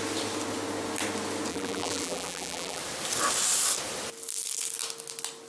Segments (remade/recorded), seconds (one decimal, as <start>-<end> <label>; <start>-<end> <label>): 0.0-1.5 recorded; 1.5-2.8 remade; 2.8-5.5 recorded